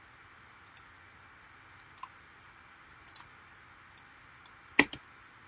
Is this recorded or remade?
recorded